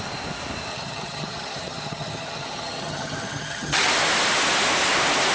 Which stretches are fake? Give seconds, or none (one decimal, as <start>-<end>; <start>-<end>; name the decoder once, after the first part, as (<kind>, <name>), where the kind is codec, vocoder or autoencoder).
0.7-3.9 (vocoder, HiFi-GAN)